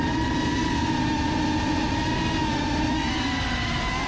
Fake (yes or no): no